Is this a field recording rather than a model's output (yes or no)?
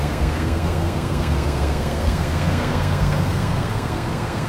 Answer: no